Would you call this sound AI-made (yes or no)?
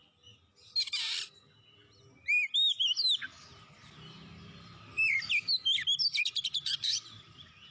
no